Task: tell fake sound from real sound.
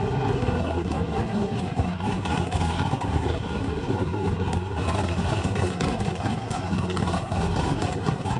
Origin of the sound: fake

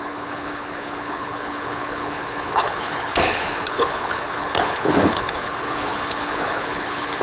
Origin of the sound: fake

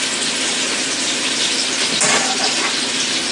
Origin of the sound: real